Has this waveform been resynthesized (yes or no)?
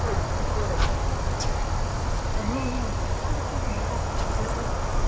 no